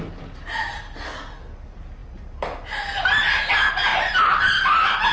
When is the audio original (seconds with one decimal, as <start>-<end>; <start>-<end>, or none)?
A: 0.0-3.9; 4.5-5.1